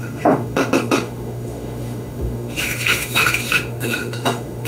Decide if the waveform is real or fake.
fake